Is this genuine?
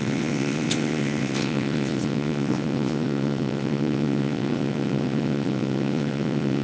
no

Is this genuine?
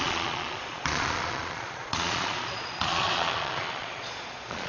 no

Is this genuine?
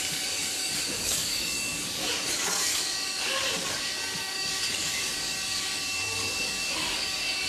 no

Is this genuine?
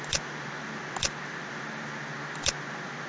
yes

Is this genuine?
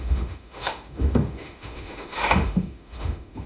no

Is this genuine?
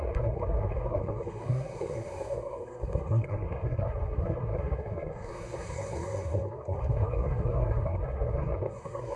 no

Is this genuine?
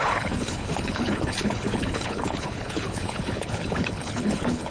no